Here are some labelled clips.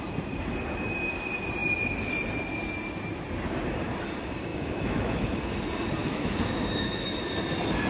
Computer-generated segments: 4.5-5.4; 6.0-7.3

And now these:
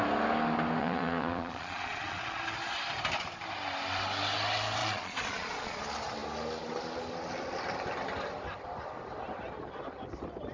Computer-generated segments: 0.8-2.4; 4.8-5.8

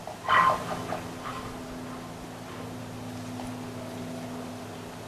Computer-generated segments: none

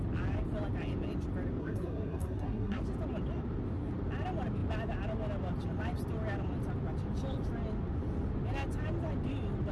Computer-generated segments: 1.6-2.8

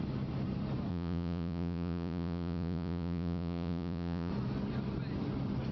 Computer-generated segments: 0.9-4.3

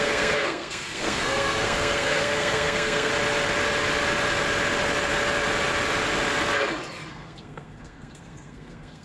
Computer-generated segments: 0.0-3.1; 7.1-9.0

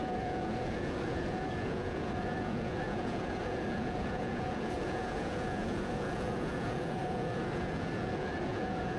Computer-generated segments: 0.0-9.0

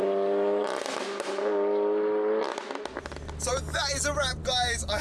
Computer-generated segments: none